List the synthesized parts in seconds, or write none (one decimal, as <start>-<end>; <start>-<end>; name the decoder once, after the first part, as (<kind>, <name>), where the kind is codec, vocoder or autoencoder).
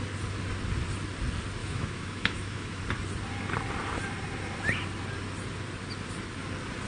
1.6-2.8 (autoencoder, DAC-VAE)